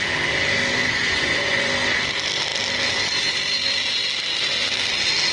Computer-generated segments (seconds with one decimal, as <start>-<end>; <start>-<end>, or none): 0.8-1.7